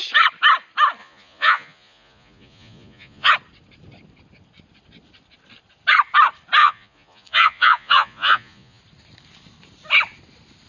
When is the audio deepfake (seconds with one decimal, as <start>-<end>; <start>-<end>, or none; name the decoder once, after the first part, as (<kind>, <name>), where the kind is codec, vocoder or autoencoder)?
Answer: 1.0-3.3 (vocoder, Vocos); 6.6-8.8